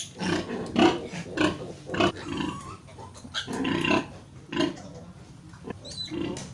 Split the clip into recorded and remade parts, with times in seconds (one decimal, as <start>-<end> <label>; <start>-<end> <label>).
0.0-6.5 recorded